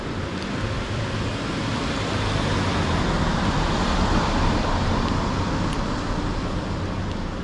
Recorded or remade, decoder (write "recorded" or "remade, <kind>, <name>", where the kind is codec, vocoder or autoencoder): remade, vocoder, BigVGAN v2